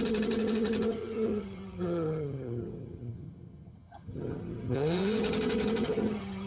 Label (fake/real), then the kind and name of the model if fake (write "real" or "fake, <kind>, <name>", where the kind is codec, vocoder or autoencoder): fake, vocoder, HiFi-GAN